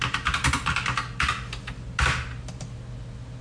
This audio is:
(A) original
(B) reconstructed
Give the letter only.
A